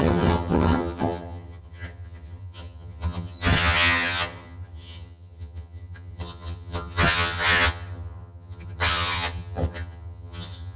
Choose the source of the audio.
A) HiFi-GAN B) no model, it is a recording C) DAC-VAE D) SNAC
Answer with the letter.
A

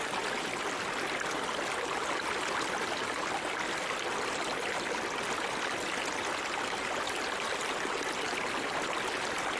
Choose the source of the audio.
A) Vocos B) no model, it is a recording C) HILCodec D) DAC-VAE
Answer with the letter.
B